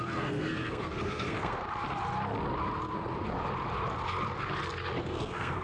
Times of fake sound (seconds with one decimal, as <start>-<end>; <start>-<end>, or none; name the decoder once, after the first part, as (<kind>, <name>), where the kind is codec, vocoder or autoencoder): 0.0-1.6 (codec, SNAC); 5.0-5.6